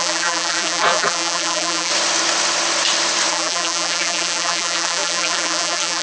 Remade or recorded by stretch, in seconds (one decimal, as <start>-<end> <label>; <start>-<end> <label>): 0.0-1.9 remade; 1.9-3.3 recorded; 3.3-6.0 remade